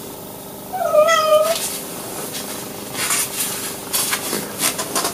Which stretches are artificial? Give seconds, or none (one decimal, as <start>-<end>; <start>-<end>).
none

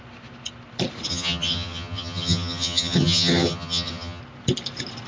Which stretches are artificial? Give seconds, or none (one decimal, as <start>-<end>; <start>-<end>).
1.1-4.2

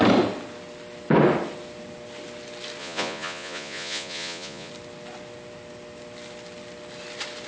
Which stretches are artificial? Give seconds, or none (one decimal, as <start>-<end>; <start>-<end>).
2.8-4.7